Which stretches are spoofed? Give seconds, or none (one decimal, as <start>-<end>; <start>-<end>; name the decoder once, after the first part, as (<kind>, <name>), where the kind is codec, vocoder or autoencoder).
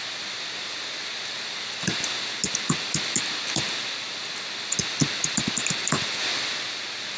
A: none